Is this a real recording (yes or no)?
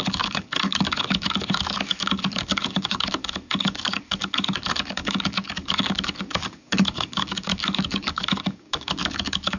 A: no